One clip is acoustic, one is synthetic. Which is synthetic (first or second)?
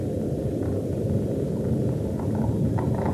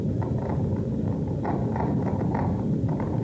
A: second